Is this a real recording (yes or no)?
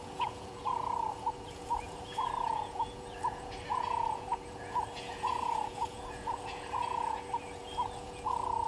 no